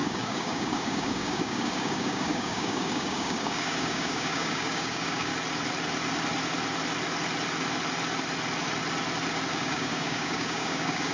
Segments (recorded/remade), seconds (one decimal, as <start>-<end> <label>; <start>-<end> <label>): 0.0-5.3 remade; 5.3-9.5 recorded; 9.5-11.1 remade